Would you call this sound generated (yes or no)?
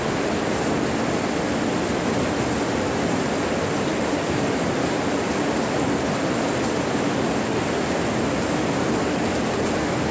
no